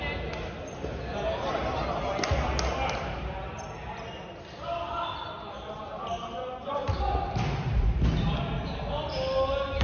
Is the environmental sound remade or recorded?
recorded